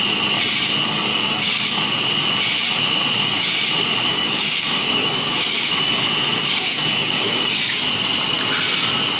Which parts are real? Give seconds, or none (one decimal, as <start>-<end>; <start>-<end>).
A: 0.0-1.1; 1.8-4.1; 6.0-6.4; 7.7-9.2

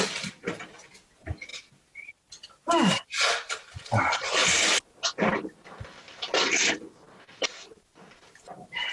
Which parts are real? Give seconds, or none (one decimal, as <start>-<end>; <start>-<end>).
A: 0.0-8.9

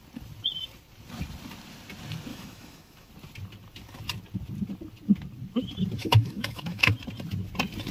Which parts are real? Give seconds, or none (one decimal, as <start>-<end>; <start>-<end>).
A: 0.0-2.3; 3.1-6.0; 6.9-7.9

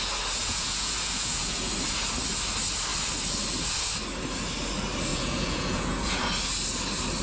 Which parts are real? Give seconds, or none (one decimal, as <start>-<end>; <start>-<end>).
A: 0.0-0.4; 1.7-5.1; 6.2-7.2

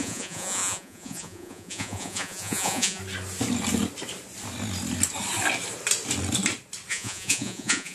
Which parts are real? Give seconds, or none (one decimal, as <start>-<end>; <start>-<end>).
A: 3.0-6.9